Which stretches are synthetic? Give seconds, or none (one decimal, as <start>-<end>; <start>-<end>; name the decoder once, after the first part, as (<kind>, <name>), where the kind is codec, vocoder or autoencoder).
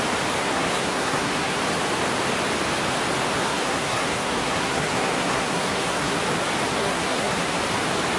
0.4-1.6 (codec, SNAC); 3.4-6.2; 6.8-7.6